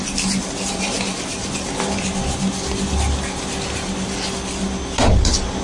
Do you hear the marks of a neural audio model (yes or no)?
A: no